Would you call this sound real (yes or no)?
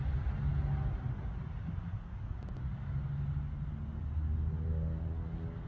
yes